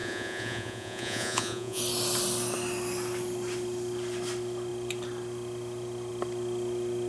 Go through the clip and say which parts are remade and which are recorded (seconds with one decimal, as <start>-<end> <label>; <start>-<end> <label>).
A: 0.0-1.8 remade; 1.8-7.1 recorded